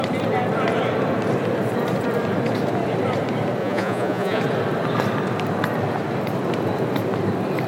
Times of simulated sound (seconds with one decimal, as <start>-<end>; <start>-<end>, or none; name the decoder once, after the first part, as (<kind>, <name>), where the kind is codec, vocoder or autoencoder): 3.6-4.4 (vocoder, Vocos)